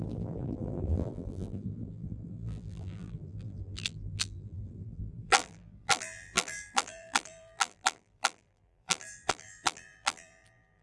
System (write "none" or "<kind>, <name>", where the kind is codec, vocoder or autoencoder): vocoder, BigVGAN v2